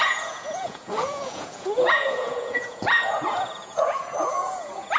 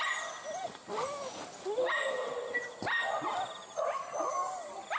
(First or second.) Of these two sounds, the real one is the second